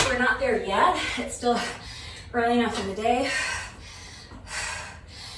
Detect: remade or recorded recorded